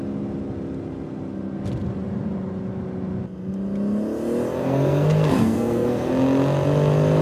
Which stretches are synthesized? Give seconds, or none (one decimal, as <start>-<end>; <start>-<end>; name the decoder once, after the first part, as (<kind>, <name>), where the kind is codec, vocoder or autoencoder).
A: 4.6-6.1 (codec, SNAC)